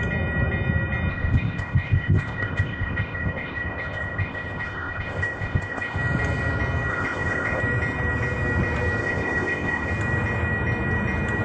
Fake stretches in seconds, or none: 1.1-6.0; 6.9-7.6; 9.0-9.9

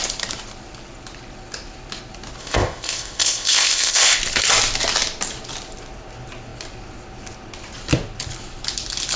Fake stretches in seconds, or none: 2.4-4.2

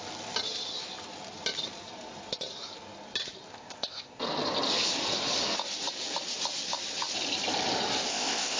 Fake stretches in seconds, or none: 3.5-4.2; 8.1-8.6

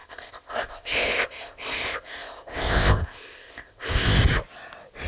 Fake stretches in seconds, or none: 0.0-4.2

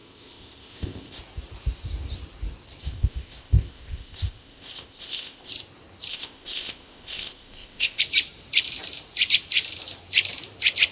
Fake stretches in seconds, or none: 0.0-1.2; 2.8-5.5; 6.1-8.0